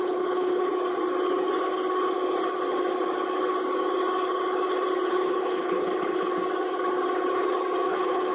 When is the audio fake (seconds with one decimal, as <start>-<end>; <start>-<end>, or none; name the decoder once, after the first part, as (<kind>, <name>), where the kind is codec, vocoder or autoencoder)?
0.0-0.7 (codec, HILCodec); 5.1-6.1; 7.9-8.3